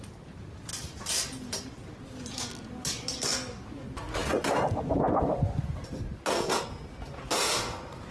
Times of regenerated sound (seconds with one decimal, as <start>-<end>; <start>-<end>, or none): 0.7-1.8; 4.2-5.6

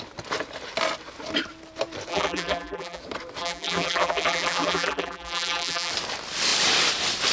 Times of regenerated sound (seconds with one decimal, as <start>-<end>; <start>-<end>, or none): 2.1-3.0; 3.4-5.9

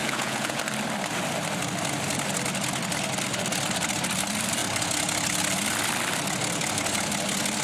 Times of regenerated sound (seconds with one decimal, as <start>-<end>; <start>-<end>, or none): 0.0-0.6

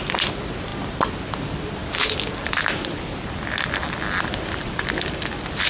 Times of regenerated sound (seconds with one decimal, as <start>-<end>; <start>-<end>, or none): none

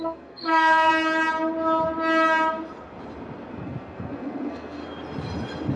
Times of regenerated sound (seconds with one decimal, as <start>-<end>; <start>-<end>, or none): 0.0-0.9; 3.5-4.8